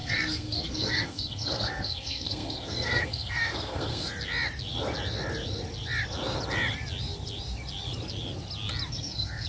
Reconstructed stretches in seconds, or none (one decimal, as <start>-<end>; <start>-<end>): 0.0-4.1; 8.9-9.5